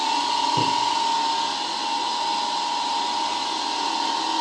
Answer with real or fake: real